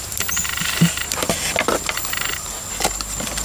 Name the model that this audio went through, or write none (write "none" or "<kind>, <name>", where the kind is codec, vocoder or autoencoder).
none